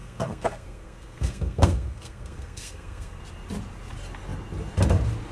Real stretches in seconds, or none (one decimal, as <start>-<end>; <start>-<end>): 3.2-5.3